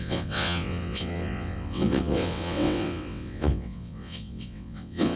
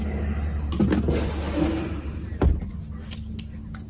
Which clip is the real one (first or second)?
second